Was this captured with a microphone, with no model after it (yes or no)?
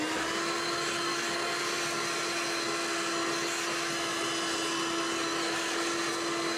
yes